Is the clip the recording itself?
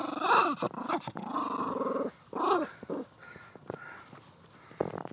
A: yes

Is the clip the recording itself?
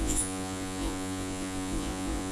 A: no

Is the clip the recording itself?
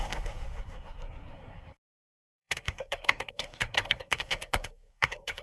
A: no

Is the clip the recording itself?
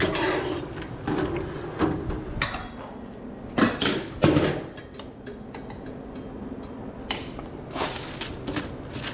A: yes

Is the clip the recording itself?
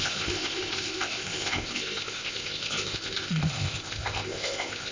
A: no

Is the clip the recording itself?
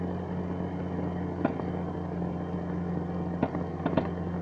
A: yes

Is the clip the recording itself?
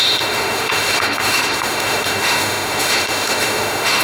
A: no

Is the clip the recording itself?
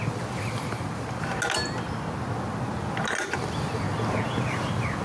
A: yes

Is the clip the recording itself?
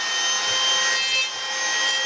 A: yes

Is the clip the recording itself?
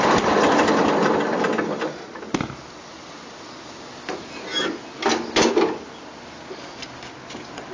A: yes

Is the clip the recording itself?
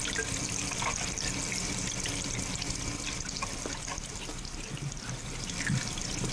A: yes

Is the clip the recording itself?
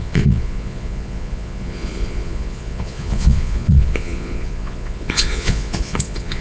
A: no